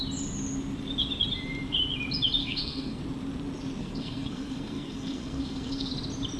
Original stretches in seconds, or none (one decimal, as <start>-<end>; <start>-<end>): 0.0-2.4; 3.0-3.8; 5.9-6.4